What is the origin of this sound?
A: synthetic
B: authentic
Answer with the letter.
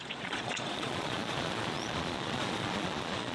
A